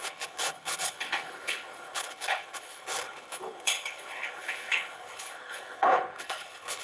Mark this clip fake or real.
fake